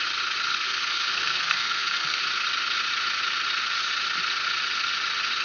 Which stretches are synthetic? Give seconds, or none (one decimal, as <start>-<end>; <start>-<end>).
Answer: 0.5-2.2